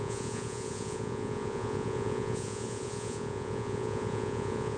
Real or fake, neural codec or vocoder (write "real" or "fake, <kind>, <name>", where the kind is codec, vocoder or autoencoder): fake, vocoder, Vocos